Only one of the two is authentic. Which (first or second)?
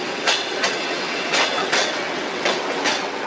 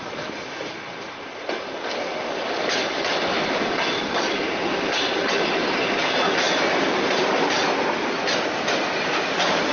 second